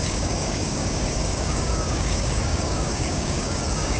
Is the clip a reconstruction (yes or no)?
yes